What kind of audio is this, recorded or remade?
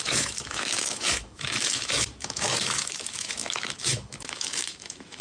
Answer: remade